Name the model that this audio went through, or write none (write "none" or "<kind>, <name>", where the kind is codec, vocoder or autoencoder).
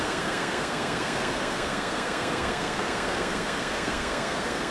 codec, SNAC